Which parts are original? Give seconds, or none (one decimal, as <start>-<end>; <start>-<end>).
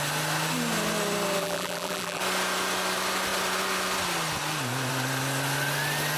0.0-1.4; 2.2-6.2